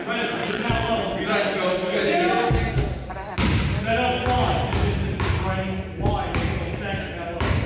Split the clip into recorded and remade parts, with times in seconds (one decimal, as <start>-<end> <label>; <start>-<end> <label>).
0.0-0.4 recorded; 0.4-0.9 remade; 0.9-7.7 recorded

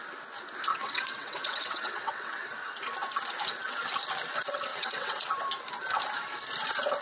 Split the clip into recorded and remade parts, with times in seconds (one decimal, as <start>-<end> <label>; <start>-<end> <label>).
0.0-0.7 recorded; 0.7-2.7 remade; 2.7-4.7 recorded; 4.7-5.3 remade; 5.3-7.0 recorded